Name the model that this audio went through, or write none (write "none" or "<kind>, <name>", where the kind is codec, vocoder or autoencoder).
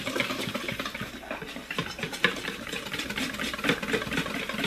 vocoder, BigVGAN v2